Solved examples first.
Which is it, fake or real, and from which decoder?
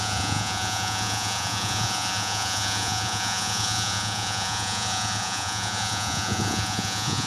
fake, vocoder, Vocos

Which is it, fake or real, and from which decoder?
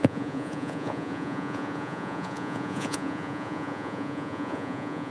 fake, vocoder, Vocos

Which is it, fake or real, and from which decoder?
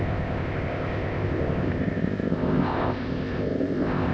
fake, codec, ZipCodec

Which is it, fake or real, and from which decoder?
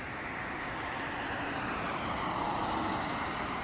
real